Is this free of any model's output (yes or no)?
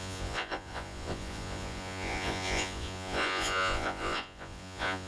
no